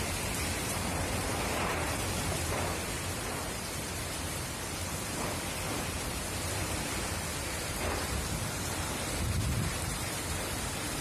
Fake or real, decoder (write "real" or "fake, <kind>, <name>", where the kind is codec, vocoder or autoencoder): fake, vocoder, BigVGAN v2